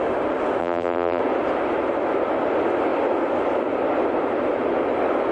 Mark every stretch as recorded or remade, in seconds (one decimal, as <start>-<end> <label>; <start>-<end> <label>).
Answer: 0.0-0.6 recorded; 0.6-1.2 remade; 1.2-5.3 recorded